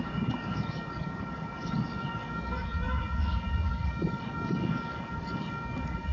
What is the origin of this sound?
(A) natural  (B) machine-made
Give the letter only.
B